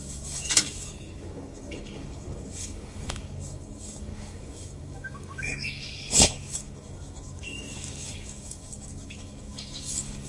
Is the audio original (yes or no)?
no